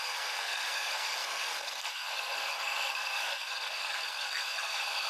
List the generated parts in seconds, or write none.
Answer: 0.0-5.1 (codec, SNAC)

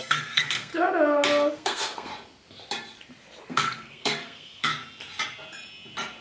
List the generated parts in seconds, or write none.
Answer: 0.0-0.7 (codec, SNAC); 1.5-2.1; 3.5-4.7

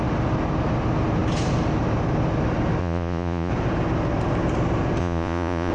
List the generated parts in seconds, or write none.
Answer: 2.8-3.5 (vocoder, Vocos); 5.0-5.7

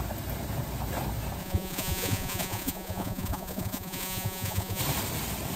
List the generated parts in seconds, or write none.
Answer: 1.4-4.8 (vocoder, Vocos)

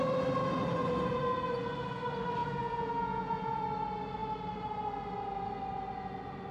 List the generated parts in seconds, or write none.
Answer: 2.4-3.6 (vocoder, Vocos)

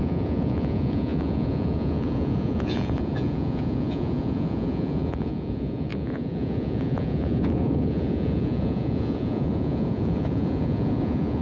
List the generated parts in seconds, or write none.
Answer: 0.0-11.4 (vocoder, Vocos)

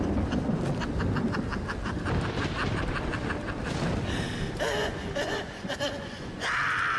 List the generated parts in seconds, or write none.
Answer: 4.8-6.5 (vocoder, Vocos)